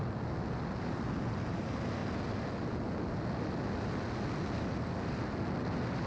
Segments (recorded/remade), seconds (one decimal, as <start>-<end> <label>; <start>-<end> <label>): 0.0-6.1 recorded